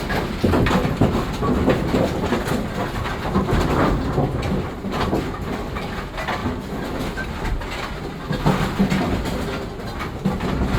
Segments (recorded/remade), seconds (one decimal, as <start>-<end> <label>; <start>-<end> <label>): 0.0-10.8 recorded